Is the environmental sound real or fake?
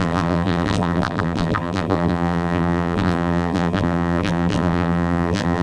fake